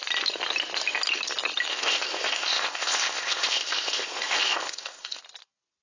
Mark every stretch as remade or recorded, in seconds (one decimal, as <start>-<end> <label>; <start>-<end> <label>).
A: 0.0-1.7 recorded; 1.7-5.2 remade; 5.2-5.8 recorded